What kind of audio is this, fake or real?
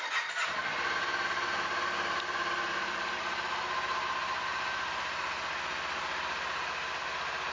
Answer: real